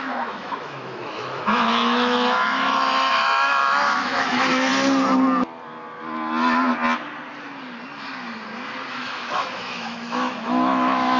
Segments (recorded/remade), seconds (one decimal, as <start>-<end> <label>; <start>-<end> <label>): 0.0-4.7 remade; 4.7-8.9 recorded; 8.9-11.2 remade